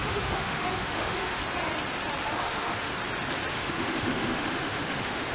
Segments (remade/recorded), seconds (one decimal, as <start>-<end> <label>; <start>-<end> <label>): 0.0-1.4 remade; 1.4-2.2 recorded; 2.2-2.9 remade; 2.9-3.5 recorded; 3.5-5.3 remade